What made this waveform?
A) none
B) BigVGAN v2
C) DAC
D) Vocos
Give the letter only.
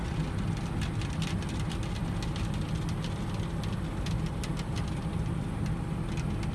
A